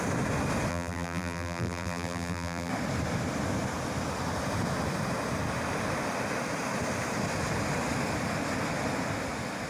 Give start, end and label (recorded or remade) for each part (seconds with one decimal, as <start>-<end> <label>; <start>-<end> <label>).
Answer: 0.0-0.7 recorded; 0.7-2.7 remade; 2.7-9.7 recorded